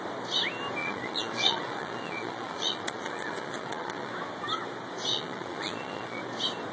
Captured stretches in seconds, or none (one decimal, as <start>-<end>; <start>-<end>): 0.0-0.8; 4.1-5.1; 6.2-6.7